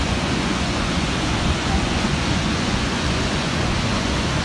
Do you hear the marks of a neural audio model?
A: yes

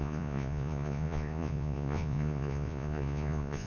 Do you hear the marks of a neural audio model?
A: yes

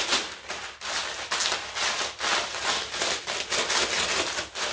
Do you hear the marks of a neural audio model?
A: no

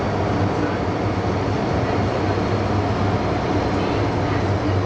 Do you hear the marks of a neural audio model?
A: no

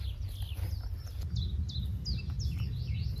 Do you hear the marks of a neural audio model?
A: no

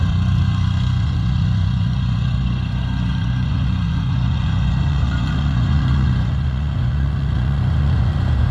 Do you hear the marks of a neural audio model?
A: yes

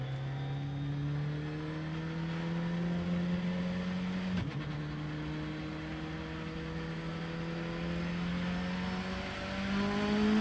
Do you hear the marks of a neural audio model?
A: no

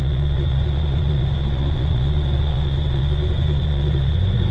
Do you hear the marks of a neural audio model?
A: yes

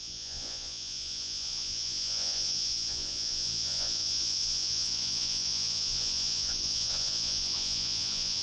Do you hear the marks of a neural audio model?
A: yes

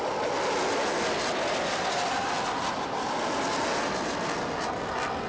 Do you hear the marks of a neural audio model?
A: no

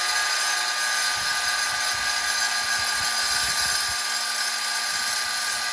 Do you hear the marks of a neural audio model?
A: no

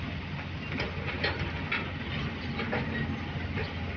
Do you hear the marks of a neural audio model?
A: no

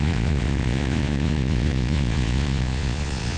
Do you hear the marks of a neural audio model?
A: yes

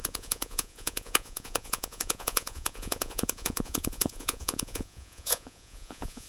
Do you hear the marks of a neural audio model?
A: yes